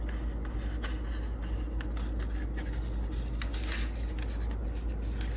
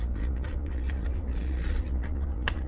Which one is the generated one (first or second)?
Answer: second